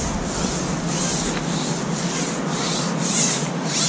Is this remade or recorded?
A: recorded